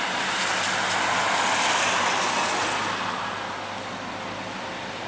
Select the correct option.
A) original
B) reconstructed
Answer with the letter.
A